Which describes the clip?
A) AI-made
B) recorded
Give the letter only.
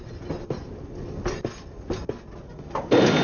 B